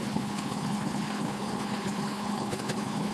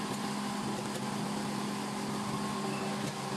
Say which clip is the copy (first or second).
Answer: first